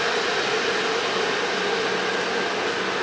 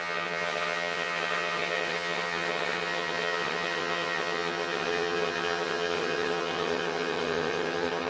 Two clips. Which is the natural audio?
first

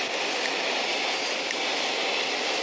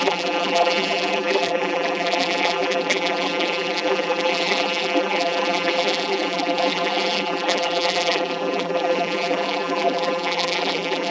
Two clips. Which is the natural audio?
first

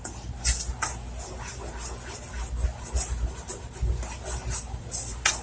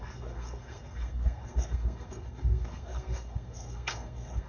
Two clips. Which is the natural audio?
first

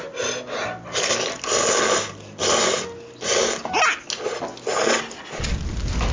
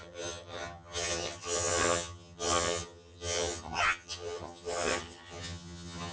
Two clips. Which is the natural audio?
first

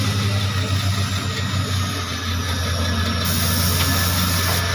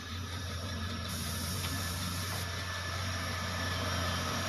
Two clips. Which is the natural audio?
first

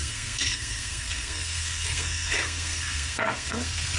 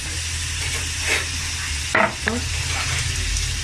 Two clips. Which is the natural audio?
second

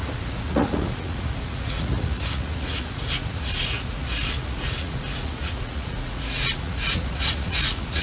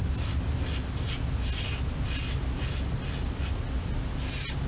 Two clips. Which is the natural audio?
second